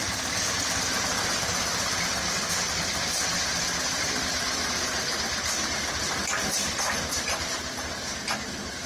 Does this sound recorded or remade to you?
recorded